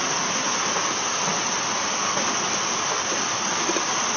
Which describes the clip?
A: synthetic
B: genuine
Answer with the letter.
B